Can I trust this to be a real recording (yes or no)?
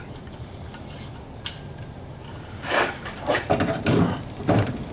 no